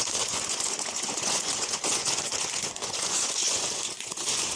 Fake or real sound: fake